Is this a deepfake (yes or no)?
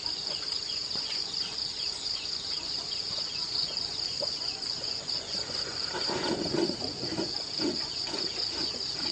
yes